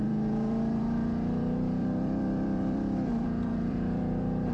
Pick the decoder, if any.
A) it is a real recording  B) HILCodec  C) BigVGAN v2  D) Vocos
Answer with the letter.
C